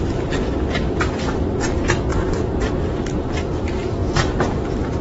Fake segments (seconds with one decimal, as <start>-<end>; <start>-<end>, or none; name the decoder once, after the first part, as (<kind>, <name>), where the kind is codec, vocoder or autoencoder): 2.1-2.7 (vocoder, BigVGAN v2); 4.0-4.6